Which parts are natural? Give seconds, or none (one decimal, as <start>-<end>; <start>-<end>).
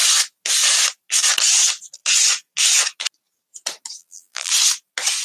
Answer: 0.0-4.0; 4.5-5.2